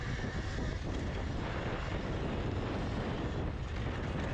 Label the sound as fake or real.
real